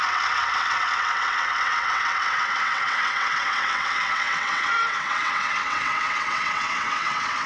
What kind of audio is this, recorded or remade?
remade